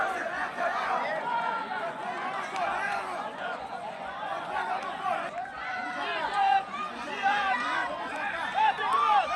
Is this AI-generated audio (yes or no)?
yes